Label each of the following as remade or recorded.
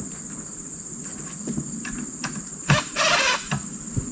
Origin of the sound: recorded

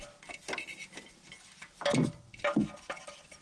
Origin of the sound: recorded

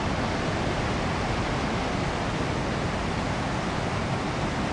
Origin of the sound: recorded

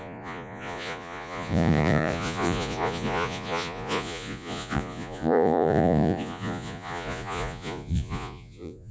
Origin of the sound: remade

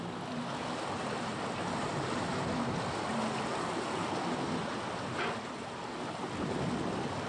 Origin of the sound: recorded